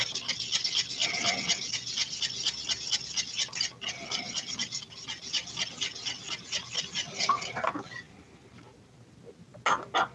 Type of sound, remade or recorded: recorded